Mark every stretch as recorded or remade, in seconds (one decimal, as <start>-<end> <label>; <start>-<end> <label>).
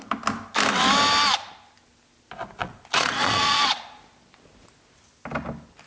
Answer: 0.0-2.6 recorded; 2.6-4.0 remade; 4.0-5.9 recorded